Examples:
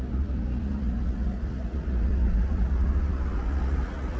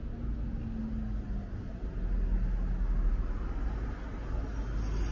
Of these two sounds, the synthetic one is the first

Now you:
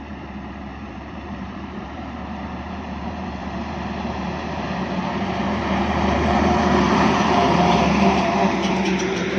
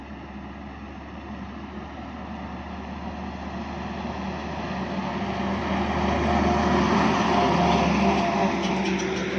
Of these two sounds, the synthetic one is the first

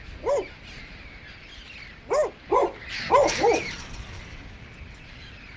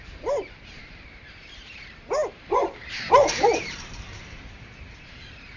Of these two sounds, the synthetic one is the second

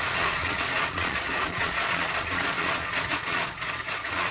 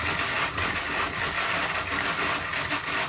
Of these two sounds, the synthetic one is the first